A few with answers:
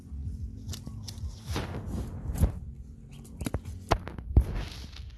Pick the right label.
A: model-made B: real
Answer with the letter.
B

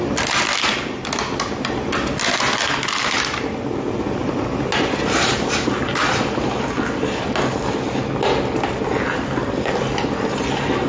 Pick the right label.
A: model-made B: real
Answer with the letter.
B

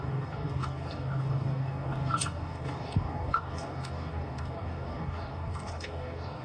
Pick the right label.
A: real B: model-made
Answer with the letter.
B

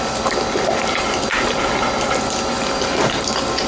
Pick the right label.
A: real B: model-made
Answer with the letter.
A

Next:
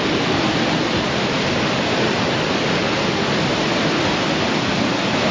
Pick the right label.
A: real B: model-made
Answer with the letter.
A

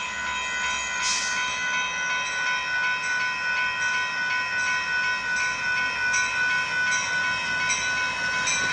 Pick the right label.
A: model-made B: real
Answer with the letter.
B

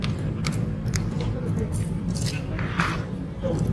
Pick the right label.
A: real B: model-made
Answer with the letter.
B